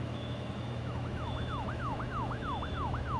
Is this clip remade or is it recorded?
remade